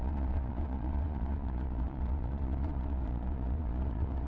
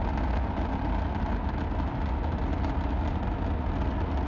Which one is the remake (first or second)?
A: first